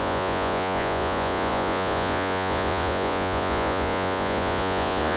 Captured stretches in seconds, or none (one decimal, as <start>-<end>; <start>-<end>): none